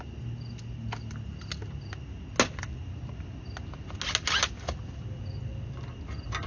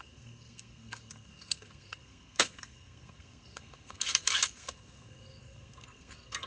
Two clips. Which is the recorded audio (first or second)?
first